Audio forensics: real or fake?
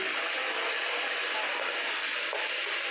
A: fake